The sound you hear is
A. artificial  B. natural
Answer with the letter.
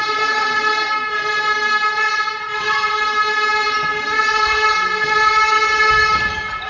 B